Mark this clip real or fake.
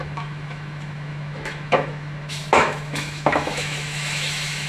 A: fake